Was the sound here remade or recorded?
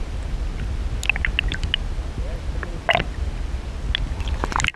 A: recorded